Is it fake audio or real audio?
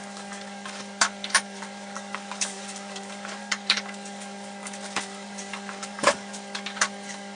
fake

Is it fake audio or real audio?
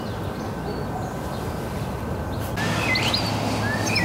real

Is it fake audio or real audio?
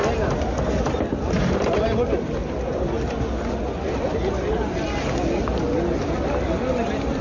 real